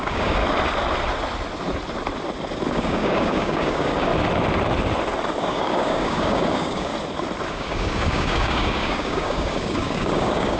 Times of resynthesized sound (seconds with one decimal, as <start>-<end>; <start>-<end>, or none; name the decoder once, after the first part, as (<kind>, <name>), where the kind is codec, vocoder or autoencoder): 0.0-0.4 (codec, DAC); 2.7-4.1; 5.4-6.9; 7.5-10.6